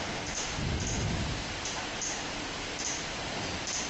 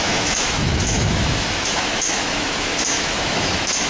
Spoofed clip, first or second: second